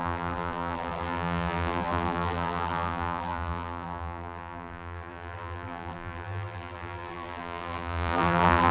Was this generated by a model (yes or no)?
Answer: yes